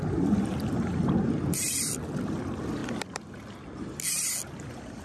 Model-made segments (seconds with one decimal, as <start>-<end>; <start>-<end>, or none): 0.0-2.8